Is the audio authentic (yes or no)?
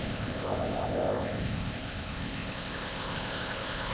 no